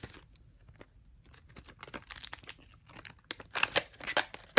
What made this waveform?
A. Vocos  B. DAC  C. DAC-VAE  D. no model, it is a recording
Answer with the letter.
D